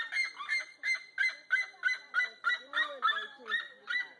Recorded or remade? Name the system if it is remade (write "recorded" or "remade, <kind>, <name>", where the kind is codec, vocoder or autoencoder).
recorded